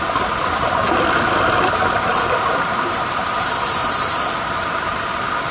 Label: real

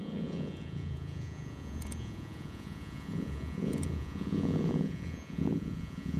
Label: fake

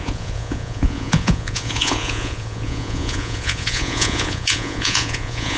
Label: fake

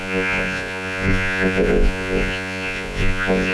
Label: fake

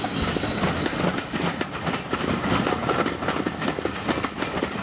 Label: real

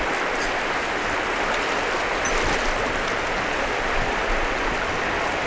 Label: real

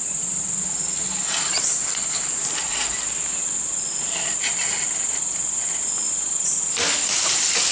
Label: real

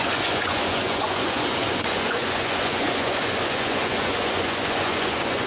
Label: fake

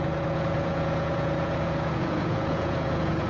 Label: fake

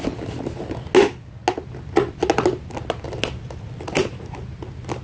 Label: real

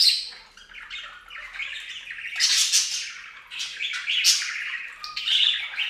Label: real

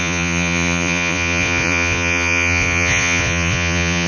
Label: fake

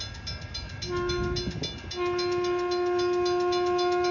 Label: real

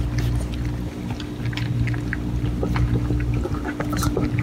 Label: real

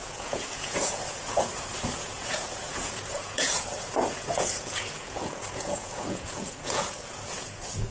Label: fake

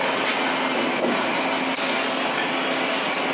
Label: real